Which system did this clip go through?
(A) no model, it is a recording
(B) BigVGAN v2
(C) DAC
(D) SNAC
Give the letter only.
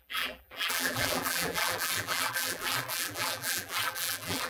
B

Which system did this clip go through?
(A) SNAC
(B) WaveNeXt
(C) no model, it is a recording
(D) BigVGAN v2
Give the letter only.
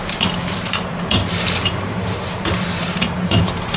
D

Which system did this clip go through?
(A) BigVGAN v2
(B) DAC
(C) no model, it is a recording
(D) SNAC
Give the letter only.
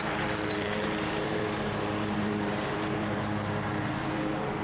A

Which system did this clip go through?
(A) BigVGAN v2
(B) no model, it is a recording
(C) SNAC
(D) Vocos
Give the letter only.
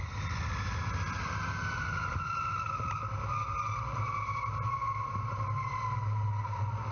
B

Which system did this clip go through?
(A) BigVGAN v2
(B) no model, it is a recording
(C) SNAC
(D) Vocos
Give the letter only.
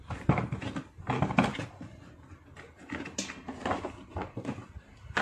B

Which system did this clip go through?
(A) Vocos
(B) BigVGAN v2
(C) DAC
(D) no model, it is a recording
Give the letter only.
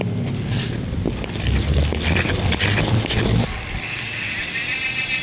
B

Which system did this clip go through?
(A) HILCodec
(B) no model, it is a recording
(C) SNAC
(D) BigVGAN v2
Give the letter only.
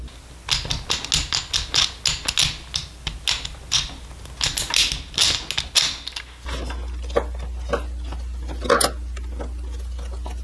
B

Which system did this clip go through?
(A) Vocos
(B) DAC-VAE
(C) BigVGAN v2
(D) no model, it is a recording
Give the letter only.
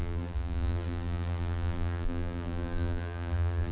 C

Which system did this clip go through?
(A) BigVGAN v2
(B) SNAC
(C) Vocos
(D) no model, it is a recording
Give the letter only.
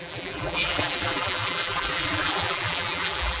A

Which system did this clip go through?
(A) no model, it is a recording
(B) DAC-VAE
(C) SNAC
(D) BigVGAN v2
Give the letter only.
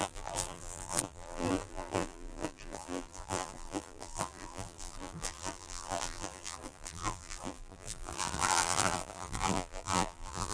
D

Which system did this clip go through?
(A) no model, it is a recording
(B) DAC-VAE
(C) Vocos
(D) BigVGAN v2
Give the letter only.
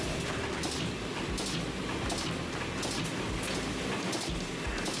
A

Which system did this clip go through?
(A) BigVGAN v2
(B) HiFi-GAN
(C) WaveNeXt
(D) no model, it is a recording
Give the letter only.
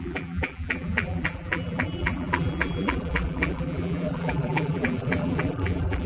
A